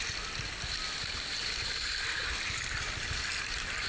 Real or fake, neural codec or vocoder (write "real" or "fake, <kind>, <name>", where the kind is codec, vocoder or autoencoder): real